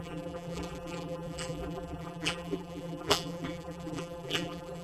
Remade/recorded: remade